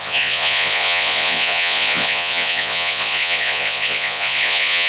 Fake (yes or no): yes